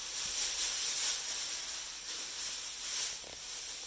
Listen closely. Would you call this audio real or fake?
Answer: real